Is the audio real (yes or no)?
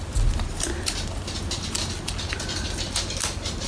yes